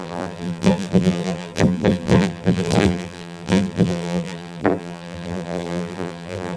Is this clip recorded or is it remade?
remade